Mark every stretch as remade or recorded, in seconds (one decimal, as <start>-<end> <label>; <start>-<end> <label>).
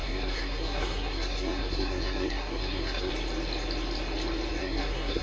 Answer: 0.0-3.1 remade; 3.1-4.6 recorded; 4.6-5.2 remade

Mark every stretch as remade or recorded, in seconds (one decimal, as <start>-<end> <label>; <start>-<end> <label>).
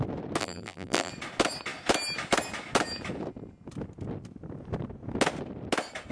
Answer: 0.0-0.4 recorded; 0.4-1.1 remade; 1.1-6.1 recorded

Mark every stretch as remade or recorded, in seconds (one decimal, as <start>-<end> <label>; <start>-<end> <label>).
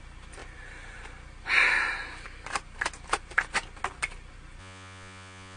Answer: 0.0-4.6 recorded; 4.6-5.6 remade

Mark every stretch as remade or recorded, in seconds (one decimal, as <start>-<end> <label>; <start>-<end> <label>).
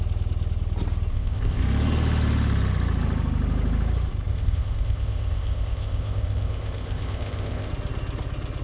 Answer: 0.0-1.1 recorded; 1.1-1.6 remade; 1.6-4.3 recorded; 4.3-7.7 remade; 7.7-8.6 recorded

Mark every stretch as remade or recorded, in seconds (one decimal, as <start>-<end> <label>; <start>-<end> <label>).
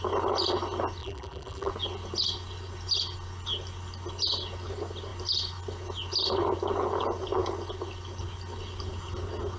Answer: 0.0-1.0 recorded; 1.0-1.7 remade; 1.7-9.6 recorded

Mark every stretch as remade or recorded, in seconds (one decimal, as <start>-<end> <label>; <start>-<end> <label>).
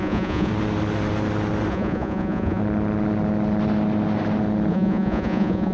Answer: 0.0-0.5 remade; 0.5-1.7 recorded; 1.7-2.6 remade; 2.6-4.7 recorded; 4.7-5.7 remade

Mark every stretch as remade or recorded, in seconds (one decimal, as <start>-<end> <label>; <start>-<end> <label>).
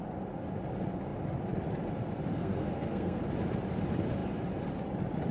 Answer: 0.0-2.4 recorded; 2.4-3.2 remade; 3.2-5.3 recorded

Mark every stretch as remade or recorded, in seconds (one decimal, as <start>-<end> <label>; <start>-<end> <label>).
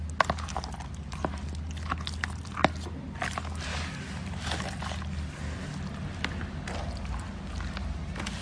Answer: 0.0-3.7 recorded; 3.7-4.6 remade; 4.6-8.4 recorded